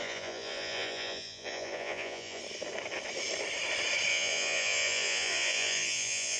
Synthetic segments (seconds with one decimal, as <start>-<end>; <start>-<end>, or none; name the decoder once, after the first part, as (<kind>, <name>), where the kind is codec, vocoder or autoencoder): 0.0-2.4 (vocoder, Vocos); 4.1-6.4

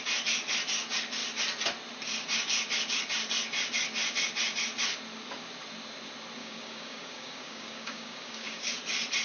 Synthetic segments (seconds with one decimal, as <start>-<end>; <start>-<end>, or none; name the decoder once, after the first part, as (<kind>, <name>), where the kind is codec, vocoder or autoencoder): 6.4-8.7 (codec, DAC)

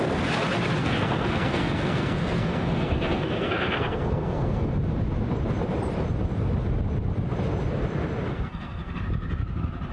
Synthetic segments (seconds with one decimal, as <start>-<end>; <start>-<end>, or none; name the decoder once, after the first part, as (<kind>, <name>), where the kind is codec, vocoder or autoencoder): 0.8-4.7 (codec, SNAC); 8.3-9.0

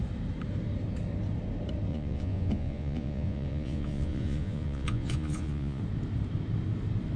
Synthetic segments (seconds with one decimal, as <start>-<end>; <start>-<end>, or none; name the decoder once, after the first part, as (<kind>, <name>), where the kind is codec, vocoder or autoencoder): 1.9-5.8 (vocoder, Vocos)

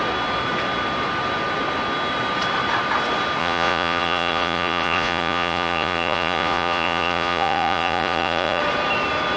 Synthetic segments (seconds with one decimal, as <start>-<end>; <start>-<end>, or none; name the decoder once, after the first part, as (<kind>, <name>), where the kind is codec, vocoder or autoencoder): 3.4-8.6 (vocoder, Vocos)